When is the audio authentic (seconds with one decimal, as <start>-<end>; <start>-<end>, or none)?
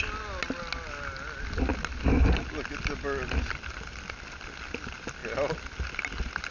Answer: 0.0-6.5